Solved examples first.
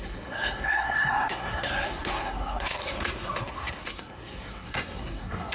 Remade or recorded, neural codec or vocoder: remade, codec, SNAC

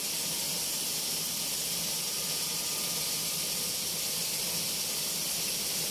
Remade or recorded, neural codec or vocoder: recorded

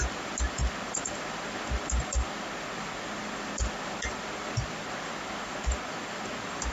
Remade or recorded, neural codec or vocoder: recorded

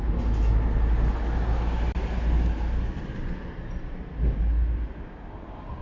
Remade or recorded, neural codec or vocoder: recorded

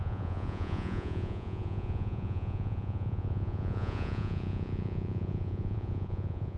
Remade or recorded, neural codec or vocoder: remade, vocoder, Vocos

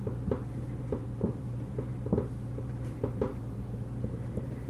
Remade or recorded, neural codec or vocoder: remade, vocoder, BigVGAN v2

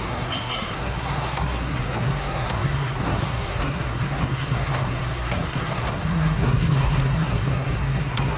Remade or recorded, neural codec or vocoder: remade, codec, SNAC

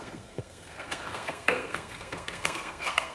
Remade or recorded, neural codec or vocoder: remade, codec, SNAC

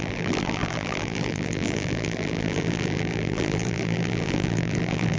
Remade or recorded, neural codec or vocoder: remade, vocoder, BigVGAN v2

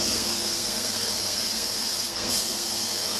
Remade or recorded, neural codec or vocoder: remade, codec, SNAC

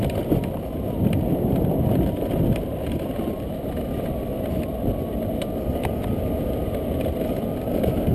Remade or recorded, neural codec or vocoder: recorded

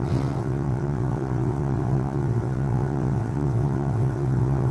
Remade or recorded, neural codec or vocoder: remade, vocoder, WaveNeXt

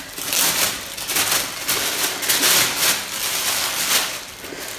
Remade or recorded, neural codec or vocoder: recorded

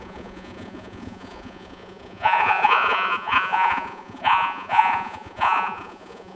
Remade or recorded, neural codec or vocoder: remade, vocoder, Vocos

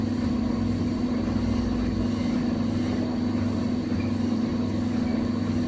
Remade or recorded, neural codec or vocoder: recorded